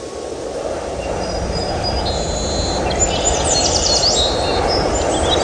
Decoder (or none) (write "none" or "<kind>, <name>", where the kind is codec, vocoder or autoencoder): none